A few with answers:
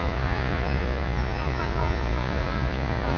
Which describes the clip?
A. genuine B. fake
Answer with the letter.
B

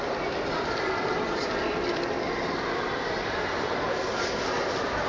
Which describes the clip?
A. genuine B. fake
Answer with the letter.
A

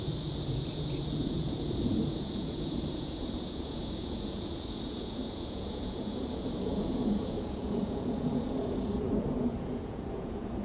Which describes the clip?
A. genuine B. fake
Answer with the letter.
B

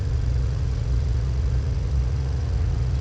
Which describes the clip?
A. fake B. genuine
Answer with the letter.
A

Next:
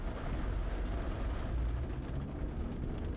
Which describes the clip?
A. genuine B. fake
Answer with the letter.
A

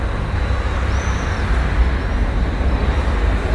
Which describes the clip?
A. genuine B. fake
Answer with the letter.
A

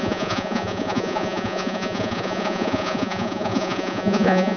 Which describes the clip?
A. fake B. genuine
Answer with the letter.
A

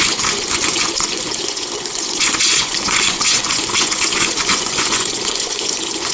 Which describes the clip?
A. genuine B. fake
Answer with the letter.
B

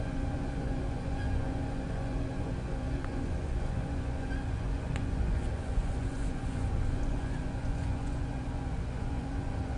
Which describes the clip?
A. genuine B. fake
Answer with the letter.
B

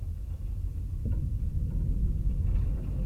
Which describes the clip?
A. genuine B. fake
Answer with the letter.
A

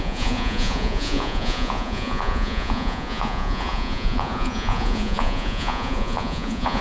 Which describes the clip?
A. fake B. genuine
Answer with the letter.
A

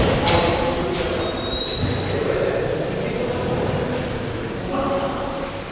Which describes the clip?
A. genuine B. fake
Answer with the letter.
A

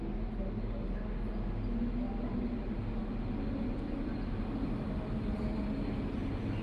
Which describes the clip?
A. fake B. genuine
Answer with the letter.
B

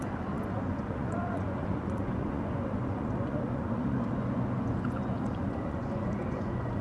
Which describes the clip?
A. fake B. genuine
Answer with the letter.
A